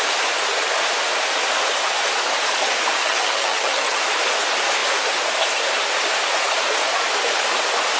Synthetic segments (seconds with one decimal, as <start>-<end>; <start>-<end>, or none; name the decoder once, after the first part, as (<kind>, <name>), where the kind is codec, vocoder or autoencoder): 3.0-4.0 (vocoder, HiFi-GAN)